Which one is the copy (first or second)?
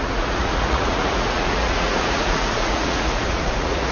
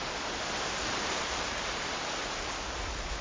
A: first